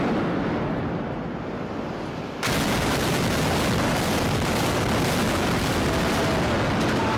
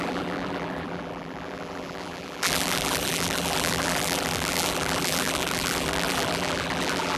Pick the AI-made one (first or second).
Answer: second